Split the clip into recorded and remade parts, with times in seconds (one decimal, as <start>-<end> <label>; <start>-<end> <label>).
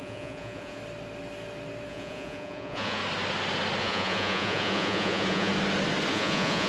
0.0-0.8 remade; 0.8-1.9 recorded; 1.9-3.0 remade; 3.0-3.8 recorded; 3.8-5.5 remade; 5.5-6.1 recorded; 6.1-6.7 remade